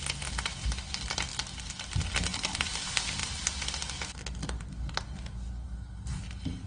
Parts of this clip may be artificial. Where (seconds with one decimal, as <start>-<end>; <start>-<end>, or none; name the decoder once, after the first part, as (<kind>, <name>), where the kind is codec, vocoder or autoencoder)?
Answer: none